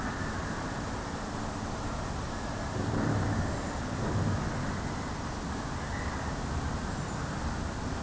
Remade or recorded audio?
recorded